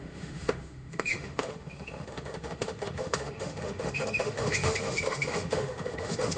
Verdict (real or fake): fake